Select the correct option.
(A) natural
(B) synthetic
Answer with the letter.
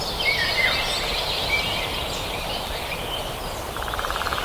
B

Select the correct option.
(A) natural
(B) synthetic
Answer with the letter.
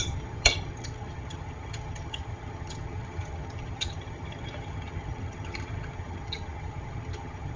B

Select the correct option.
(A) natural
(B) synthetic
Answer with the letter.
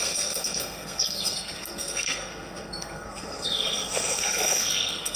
B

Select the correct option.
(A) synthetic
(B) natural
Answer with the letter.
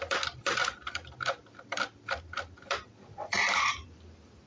A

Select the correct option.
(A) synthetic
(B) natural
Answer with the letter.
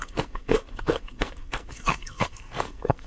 A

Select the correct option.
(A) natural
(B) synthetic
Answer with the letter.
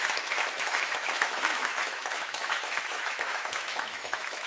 B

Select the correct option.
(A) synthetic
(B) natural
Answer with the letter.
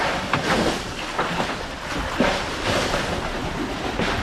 B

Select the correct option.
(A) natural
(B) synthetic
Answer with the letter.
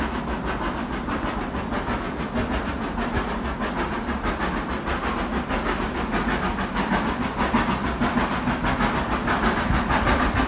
A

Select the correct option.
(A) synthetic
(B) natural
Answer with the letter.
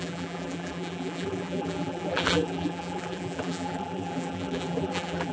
A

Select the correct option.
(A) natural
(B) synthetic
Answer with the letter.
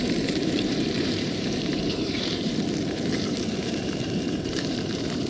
B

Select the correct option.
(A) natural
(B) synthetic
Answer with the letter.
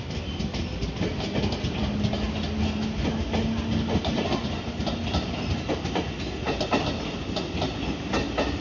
A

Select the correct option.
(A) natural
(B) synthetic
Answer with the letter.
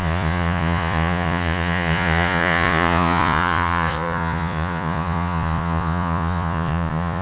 B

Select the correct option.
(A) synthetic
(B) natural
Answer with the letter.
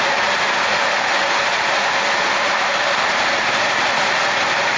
B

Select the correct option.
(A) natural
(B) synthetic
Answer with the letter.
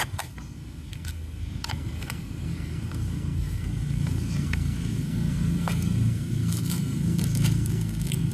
B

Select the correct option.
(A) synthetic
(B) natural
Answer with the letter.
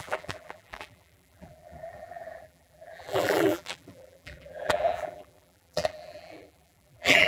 A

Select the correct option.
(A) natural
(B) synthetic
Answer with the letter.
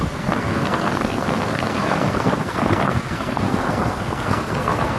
B